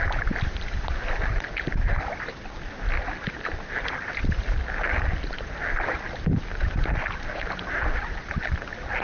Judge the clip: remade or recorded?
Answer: recorded